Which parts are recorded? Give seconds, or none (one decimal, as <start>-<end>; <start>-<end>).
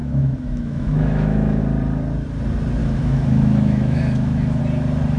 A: 1.6-2.8; 4.6-5.2